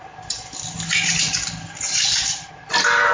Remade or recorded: recorded